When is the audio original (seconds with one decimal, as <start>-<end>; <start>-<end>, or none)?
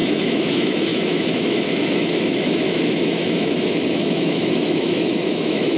none